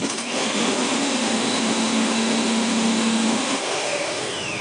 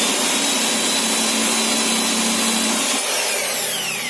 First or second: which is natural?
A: second